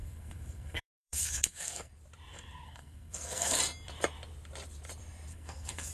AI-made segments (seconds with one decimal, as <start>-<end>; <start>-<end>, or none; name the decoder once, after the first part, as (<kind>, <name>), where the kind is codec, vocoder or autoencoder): 0.0-1.9 (codec, SNAC); 2.3-3.6; 5.3-5.9